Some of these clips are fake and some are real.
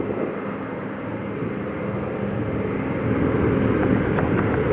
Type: real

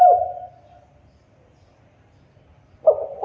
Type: real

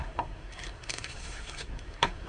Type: fake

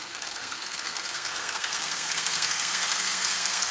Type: fake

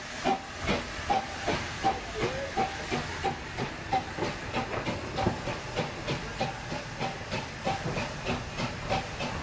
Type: real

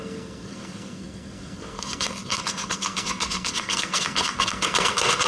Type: fake